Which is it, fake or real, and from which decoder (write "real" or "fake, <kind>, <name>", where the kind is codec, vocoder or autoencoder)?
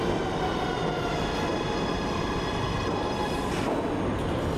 real